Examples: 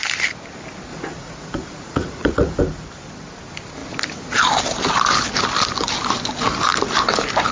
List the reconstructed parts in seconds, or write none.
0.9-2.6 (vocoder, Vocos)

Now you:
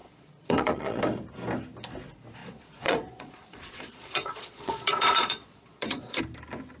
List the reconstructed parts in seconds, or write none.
0.0-1.0 (vocoder, Vocos); 2.4-6.2

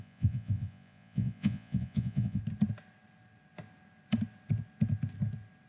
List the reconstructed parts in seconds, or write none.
0.0-2.4 (vocoder, Vocos)

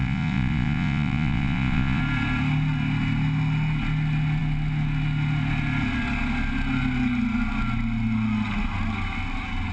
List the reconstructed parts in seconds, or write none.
0.0-2.0 (vocoder, Vocos)

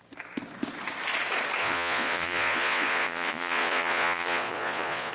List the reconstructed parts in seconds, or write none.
1.6-5.1 (vocoder, Vocos)

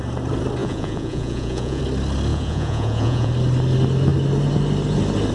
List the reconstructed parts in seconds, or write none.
0.6-1.8 (vocoder, Vocos); 2.3-3.3